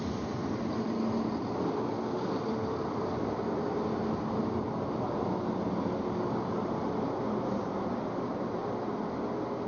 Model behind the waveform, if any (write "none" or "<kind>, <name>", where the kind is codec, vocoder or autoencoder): none